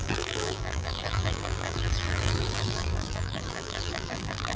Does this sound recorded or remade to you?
remade